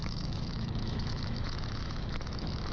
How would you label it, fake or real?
fake